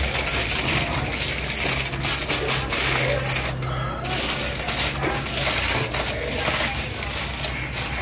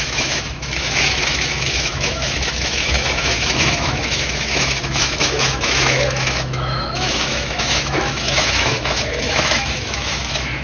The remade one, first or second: second